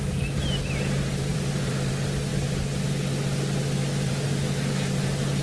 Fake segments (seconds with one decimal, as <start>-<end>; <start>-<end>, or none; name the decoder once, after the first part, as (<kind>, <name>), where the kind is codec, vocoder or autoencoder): 1.3-1.9 (vocoder, BigVGAN v2)